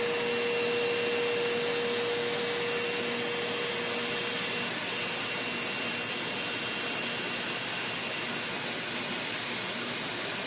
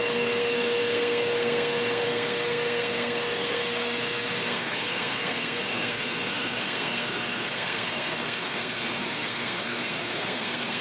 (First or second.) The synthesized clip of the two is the second